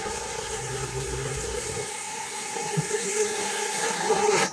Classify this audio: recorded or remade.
remade